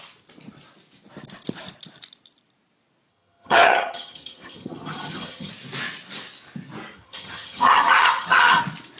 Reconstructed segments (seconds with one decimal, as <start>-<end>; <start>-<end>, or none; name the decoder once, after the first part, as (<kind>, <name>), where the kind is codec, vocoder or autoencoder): 3.1-5.5 (vocoder, HiFi-GAN); 6.9-8.6